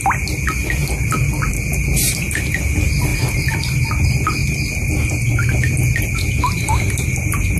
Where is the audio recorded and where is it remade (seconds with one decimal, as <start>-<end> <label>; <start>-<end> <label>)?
0.0-3.1 recorded; 3.1-3.9 remade; 3.9-7.6 recorded